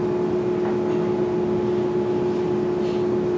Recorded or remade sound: recorded